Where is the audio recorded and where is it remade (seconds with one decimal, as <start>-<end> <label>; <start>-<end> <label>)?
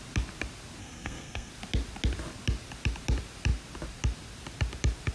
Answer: 0.0-0.8 recorded; 0.8-1.5 remade; 1.5-5.1 recorded